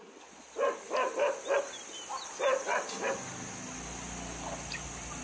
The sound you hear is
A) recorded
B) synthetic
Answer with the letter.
A